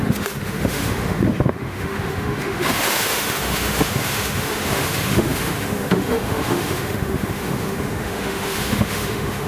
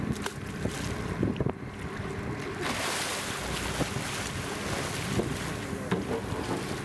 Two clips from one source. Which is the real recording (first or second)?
second